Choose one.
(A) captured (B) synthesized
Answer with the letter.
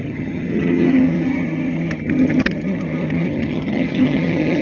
B